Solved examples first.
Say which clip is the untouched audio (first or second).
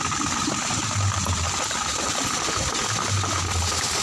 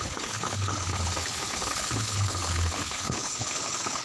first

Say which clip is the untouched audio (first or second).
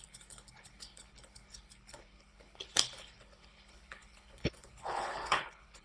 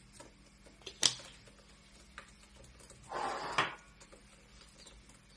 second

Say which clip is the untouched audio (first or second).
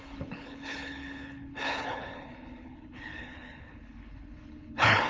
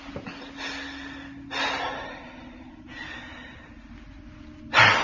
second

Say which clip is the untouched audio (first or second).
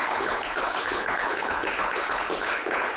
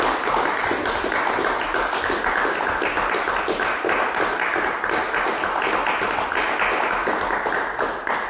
second